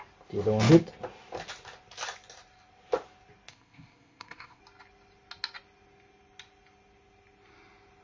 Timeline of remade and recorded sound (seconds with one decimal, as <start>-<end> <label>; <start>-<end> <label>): 0.0-3.5 recorded; 3.5-4.6 remade; 4.6-8.0 recorded